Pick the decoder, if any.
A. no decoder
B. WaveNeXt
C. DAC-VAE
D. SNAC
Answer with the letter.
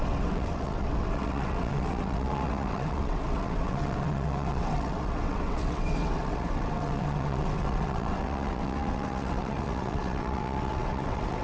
B